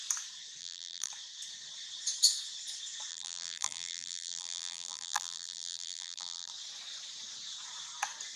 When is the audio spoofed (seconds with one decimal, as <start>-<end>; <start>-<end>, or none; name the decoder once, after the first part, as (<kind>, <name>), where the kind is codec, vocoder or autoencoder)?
0.6-1.1 (vocoder, BigVGAN v2); 3.1-6.5